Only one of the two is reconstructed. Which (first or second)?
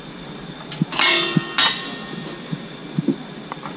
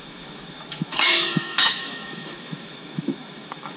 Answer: second